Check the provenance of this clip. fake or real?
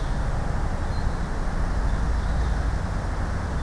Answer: real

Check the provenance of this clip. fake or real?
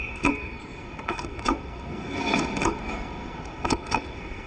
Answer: fake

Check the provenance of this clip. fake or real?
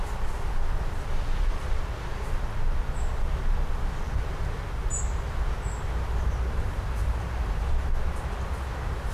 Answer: real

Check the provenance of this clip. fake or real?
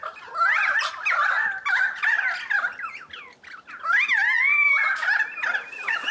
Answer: real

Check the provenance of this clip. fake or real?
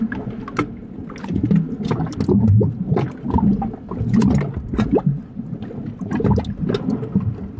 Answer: real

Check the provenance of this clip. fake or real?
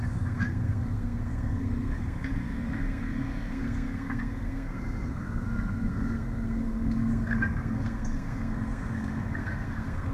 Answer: fake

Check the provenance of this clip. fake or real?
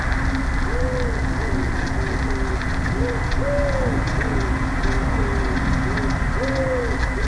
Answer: real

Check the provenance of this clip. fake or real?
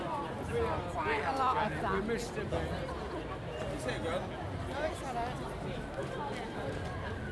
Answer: real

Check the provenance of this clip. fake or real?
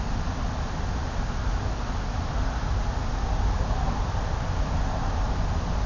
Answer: real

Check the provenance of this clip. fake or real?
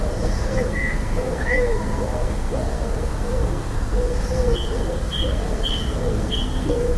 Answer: fake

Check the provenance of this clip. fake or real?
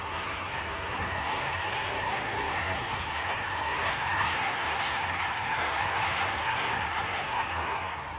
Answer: fake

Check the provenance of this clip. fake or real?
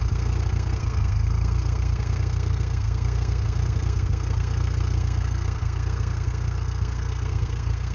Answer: fake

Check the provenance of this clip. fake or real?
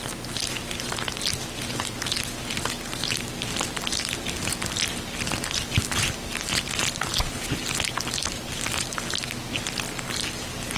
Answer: real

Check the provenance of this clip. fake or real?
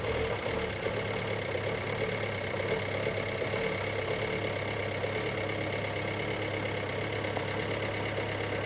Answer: real